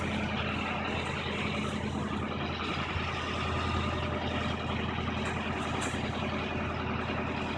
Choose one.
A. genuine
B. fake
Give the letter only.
A